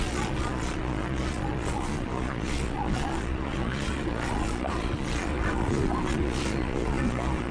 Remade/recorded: remade